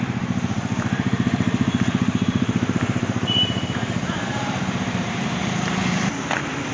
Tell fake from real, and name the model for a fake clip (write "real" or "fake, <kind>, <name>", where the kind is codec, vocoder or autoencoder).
fake, vocoder, BigVGAN v2